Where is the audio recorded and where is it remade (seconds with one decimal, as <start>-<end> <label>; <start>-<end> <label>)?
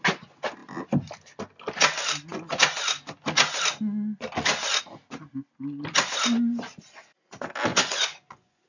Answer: 0.0-7.7 recorded; 7.7-8.7 remade